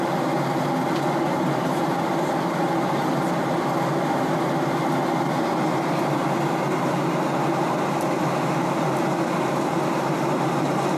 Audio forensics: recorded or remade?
recorded